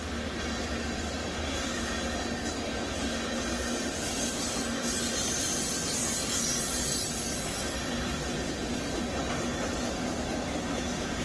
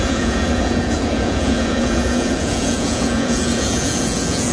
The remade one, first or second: second